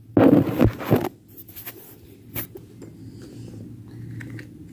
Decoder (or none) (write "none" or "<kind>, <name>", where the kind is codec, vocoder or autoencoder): none